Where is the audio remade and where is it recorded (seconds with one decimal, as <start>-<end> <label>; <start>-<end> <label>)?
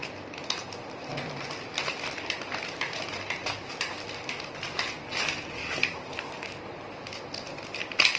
0.0-3.4 recorded; 3.4-4.8 remade; 4.8-8.2 recorded